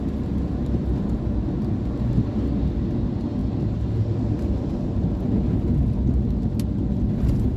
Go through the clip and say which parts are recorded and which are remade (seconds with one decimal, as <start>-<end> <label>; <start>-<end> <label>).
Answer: 0.0-7.6 recorded